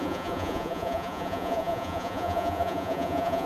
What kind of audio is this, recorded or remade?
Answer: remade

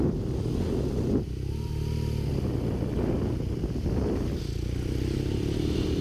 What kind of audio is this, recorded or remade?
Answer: recorded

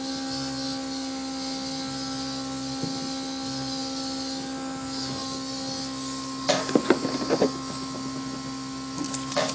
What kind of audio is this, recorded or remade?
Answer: recorded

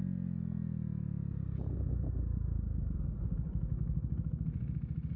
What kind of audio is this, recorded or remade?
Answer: recorded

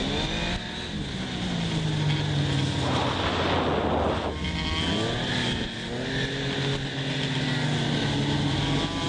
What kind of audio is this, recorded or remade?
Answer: recorded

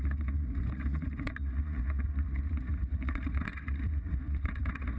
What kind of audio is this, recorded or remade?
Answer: remade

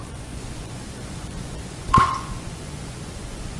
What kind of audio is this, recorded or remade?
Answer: remade